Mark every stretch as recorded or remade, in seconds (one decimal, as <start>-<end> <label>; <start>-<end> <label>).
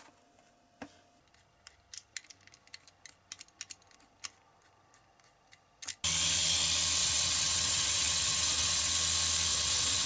0.0-7.0 recorded; 7.0-8.9 remade; 8.9-9.5 recorded; 9.5-10.1 remade